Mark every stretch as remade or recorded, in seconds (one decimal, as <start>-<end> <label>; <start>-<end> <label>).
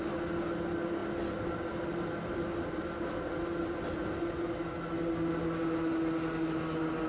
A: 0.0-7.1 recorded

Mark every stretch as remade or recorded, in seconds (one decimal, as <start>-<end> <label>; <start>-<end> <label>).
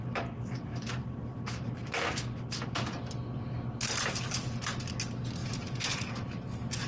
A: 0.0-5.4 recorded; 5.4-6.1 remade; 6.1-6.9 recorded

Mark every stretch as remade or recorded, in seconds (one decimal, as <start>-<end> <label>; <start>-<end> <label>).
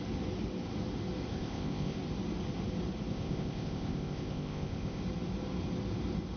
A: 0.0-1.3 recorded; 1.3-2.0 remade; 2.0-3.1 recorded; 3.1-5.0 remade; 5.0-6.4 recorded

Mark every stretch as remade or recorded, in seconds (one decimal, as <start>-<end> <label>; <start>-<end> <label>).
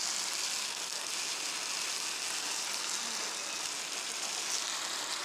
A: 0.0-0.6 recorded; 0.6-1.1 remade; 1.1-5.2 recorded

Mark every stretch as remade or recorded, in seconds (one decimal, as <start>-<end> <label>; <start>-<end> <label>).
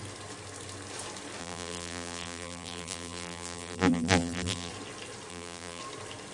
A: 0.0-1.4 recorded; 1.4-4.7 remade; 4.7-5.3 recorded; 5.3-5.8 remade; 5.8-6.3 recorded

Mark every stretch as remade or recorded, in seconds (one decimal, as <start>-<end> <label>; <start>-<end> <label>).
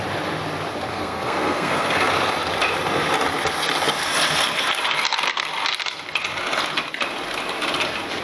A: 0.0-0.9 recorded; 0.9-2.1 remade; 2.1-8.2 recorded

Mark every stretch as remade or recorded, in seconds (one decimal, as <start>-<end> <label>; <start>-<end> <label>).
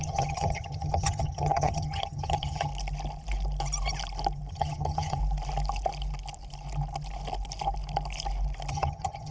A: 0.0-2.7 remade; 2.7-4.5 recorded; 4.5-5.2 remade; 5.2-8.7 recorded; 8.7-9.3 remade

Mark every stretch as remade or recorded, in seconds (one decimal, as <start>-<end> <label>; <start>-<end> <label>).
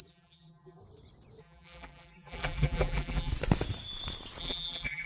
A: 0.0-0.8 remade; 0.8-1.4 recorded; 1.4-3.3 remade; 3.3-4.4 recorded; 4.4-5.1 remade